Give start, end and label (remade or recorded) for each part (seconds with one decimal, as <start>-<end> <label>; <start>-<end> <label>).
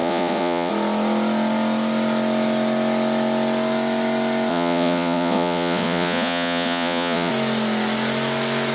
0.0-0.7 remade; 0.7-4.5 recorded; 4.5-7.3 remade; 7.3-8.7 recorded